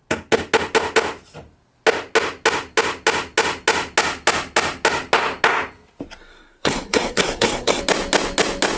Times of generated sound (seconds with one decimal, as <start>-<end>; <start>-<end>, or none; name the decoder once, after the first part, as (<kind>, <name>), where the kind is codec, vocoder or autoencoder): 6.3-7.8 (codec, SNAC)